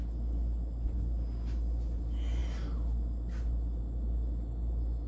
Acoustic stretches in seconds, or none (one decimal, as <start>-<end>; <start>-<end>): 0.0-5.1